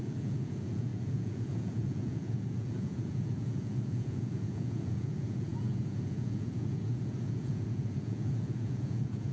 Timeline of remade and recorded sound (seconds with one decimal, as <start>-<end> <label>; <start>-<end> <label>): 0.0-9.3 remade